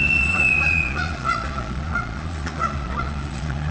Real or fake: fake